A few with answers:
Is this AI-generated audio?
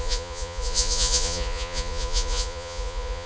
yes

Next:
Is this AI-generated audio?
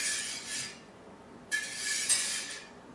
yes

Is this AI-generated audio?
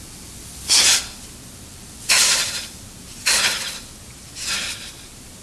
no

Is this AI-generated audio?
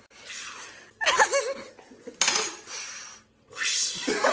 no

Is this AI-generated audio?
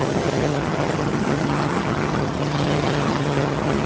yes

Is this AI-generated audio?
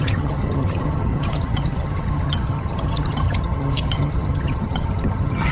yes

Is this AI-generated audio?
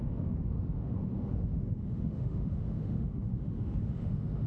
yes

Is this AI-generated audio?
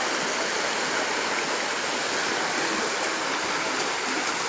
no